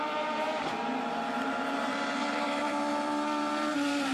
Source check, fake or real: fake